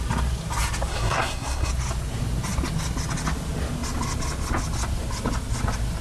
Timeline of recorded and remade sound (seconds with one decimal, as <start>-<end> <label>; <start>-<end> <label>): 0.0-0.9 recorded; 0.9-1.7 remade; 1.7-6.0 recorded

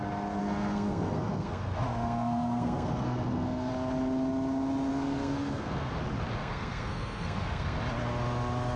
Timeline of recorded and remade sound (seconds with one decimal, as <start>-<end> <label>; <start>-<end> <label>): 0.0-0.4 recorded; 0.4-3.7 remade; 3.7-4.9 recorded; 4.9-5.9 remade; 5.9-6.4 recorded; 6.4-7.8 remade; 7.8-8.8 recorded

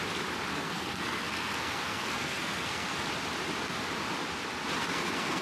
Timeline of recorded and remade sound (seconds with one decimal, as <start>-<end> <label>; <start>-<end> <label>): 0.0-0.5 recorded; 0.5-3.0 remade; 3.0-4.8 recorded; 4.8-5.4 remade

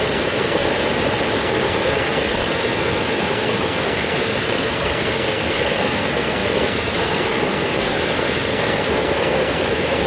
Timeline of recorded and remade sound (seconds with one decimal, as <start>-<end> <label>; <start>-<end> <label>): 0.0-0.7 remade; 0.7-1.4 recorded; 1.4-10.1 remade

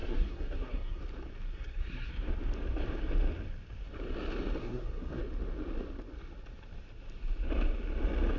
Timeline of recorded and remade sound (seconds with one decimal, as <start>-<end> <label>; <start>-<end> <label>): 0.0-1.0 remade; 1.0-1.5 recorded; 1.5-2.1 remade; 2.1-4.6 recorded; 4.6-5.2 remade; 5.2-8.4 recorded